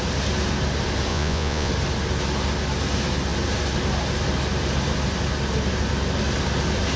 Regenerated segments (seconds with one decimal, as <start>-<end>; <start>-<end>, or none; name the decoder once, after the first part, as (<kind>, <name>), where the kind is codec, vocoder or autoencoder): 1.1-1.7 (vocoder, Vocos)